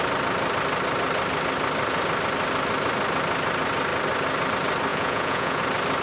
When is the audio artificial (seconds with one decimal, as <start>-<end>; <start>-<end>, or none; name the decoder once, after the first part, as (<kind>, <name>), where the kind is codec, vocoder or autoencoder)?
4.9-5.6 (vocoder, Vocos)